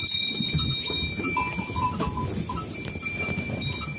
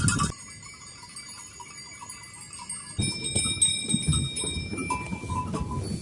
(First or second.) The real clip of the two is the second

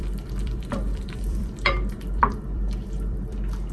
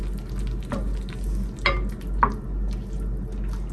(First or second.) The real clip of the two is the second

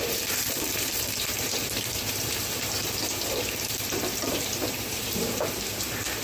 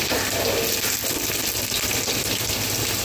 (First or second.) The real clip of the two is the second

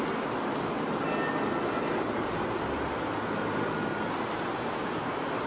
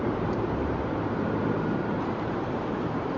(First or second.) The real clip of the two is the first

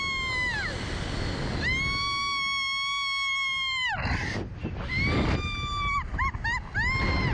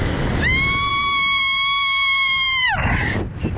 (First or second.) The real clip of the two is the first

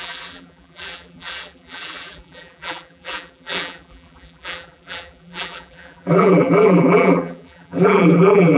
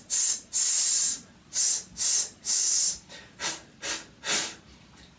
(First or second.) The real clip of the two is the second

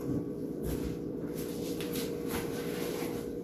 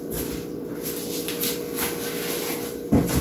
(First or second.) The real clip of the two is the second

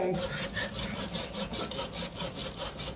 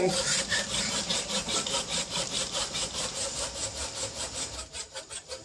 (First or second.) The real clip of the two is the first